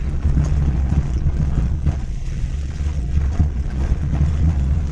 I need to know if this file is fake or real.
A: fake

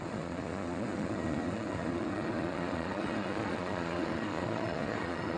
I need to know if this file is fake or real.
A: fake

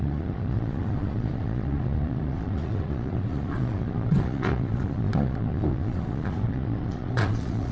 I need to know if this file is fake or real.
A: fake